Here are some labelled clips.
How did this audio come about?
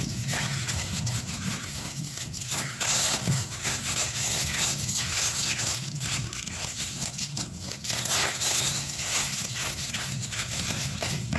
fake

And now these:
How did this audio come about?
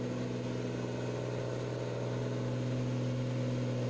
real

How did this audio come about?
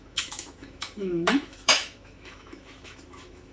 fake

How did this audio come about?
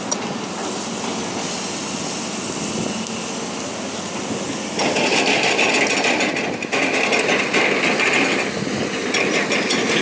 real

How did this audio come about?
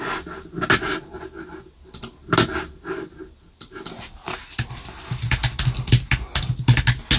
real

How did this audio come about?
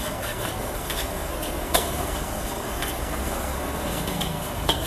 fake